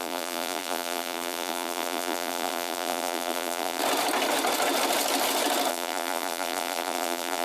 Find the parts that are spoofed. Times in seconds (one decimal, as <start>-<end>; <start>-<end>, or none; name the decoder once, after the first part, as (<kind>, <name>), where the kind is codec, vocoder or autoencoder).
0.0-3.8 (vocoder, BigVGAN v2); 5.7-7.4